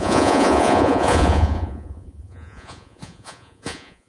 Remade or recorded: remade